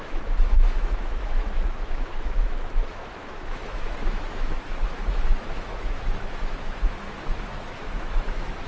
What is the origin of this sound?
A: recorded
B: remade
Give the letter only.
B